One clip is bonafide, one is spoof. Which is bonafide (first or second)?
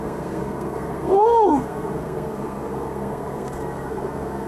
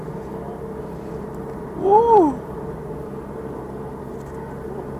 second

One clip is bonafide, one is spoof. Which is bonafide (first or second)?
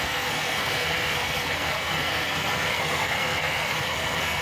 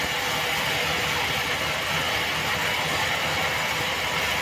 second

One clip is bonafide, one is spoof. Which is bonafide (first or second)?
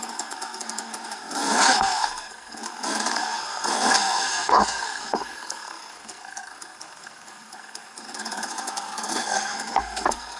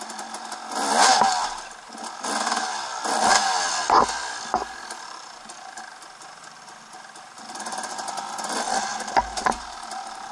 second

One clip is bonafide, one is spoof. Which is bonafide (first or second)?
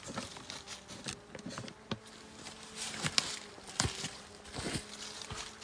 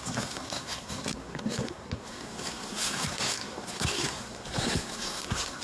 first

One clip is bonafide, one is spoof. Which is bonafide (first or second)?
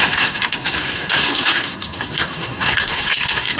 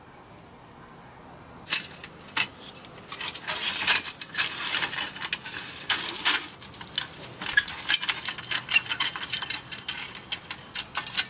second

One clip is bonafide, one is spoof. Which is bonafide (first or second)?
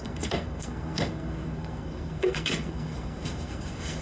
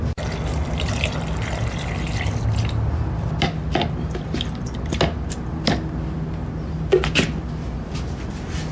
second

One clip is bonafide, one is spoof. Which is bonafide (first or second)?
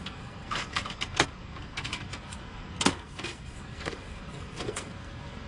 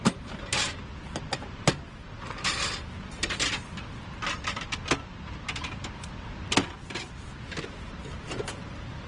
second